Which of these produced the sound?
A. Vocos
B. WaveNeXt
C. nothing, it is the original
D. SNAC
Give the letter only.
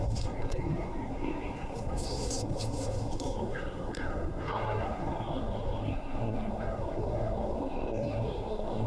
D